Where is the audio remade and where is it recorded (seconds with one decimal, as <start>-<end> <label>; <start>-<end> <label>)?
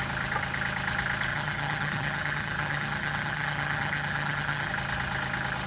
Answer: 0.0-1.3 recorded; 1.3-4.7 remade; 4.7-5.7 recorded